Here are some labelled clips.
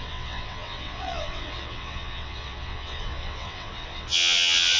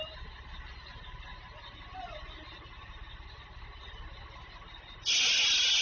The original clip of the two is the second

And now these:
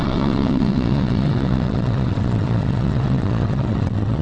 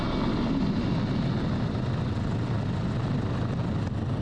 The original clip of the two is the second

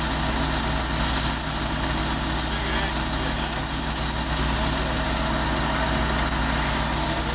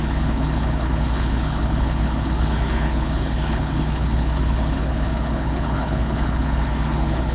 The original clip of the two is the first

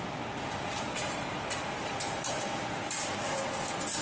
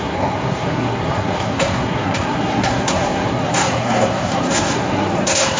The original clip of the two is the first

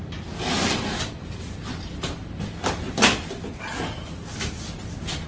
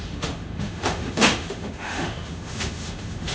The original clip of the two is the first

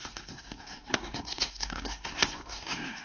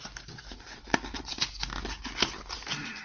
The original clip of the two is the second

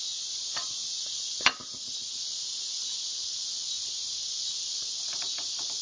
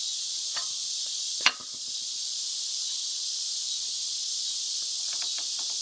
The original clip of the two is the first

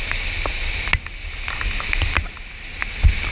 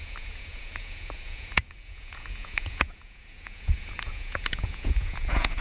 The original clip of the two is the first